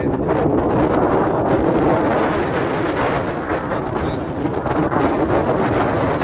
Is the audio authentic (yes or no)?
yes